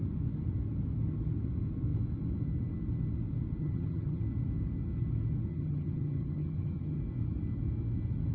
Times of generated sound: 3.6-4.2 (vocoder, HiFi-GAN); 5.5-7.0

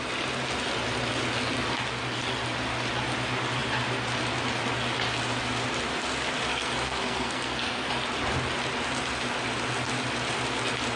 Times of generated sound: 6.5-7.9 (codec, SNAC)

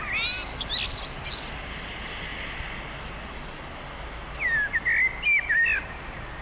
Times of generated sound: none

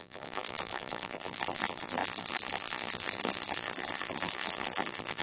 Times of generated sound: 0.0-5.2 (vocoder, BigVGAN v2)